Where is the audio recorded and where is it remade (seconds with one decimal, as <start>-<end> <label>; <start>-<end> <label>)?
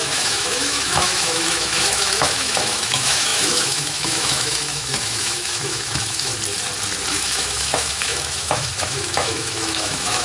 0.0-6.3 remade; 6.3-7.1 recorded; 7.1-10.2 remade